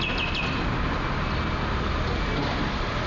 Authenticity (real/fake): real